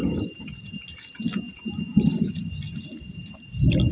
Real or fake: real